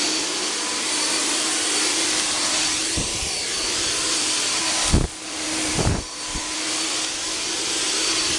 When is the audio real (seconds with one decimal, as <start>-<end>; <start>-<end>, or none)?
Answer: 0.0-2.8; 3.6-8.4